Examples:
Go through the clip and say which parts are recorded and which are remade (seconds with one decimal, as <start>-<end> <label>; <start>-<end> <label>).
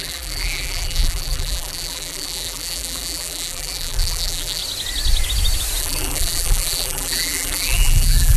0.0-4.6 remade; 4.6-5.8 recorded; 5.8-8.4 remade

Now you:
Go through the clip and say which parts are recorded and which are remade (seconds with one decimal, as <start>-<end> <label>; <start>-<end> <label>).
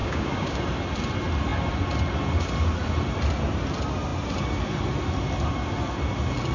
0.0-0.6 remade; 0.6-6.5 recorded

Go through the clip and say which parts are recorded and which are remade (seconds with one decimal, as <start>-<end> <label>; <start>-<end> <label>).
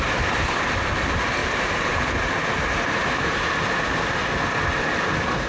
0.0-1.4 recorded; 1.4-2.0 remade; 2.0-3.0 recorded; 3.0-4.9 remade; 4.9-5.5 recorded